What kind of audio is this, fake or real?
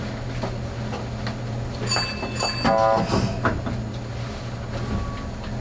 real